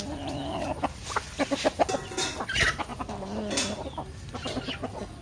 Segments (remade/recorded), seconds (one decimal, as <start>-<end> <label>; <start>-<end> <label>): 0.0-5.2 recorded